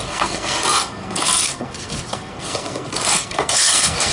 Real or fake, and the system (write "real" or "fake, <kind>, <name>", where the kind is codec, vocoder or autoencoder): fake, codec, SNAC